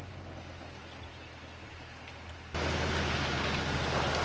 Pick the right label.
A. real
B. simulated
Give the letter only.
A